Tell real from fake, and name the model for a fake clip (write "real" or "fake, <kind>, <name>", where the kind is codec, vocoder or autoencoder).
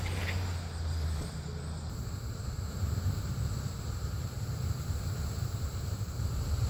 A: fake, vocoder, BigVGAN v2